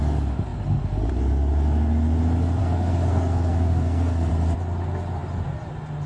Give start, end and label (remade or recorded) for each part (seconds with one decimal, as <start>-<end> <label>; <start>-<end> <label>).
0.0-2.6 recorded; 2.6-4.3 remade; 4.3-6.1 recorded